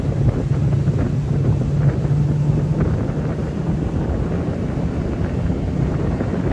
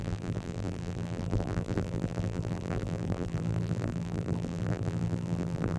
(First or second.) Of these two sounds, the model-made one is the second